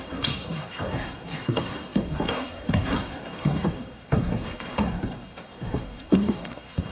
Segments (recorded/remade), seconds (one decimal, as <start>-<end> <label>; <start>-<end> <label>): 0.0-6.9 remade